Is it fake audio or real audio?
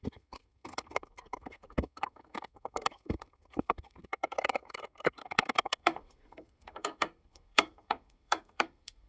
fake